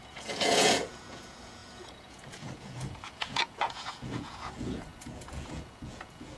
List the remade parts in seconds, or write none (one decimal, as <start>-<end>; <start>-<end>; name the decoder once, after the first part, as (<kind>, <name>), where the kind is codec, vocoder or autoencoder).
0.0-6.4 (vocoder, Vocos)